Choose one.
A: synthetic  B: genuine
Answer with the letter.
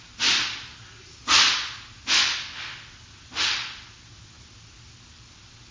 B